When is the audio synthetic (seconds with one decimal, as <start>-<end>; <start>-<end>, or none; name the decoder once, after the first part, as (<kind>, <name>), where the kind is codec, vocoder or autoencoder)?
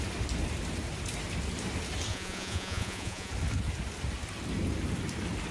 2.1-3.3 (vocoder, Vocos)